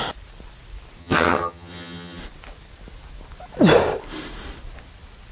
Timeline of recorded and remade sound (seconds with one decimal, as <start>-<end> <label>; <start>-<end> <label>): 0.0-1.0 recorded; 1.0-2.2 remade; 2.2-5.3 recorded